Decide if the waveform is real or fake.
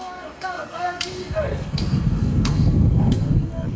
fake